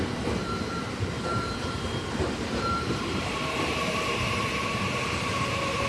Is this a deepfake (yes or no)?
yes